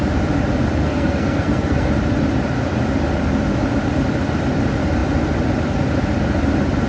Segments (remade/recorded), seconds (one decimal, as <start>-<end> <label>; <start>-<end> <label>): 0.0-0.8 recorded; 0.8-1.9 remade; 1.9-6.9 recorded